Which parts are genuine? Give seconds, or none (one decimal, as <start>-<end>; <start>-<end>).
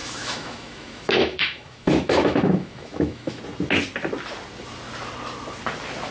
3.4-6.1